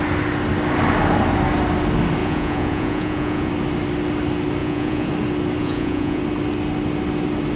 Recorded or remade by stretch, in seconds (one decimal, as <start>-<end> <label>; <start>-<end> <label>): 0.0-2.2 recorded; 2.2-3.5 remade; 3.5-4.6 recorded; 4.6-5.1 remade; 5.1-5.6 recorded; 5.6-6.2 remade; 6.2-7.6 recorded